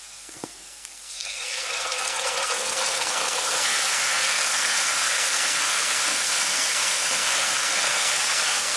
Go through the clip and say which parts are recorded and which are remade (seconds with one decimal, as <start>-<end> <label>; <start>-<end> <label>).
0.0-8.8 remade